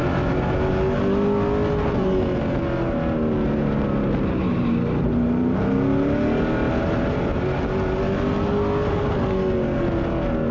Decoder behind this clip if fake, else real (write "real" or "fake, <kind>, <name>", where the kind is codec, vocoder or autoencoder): real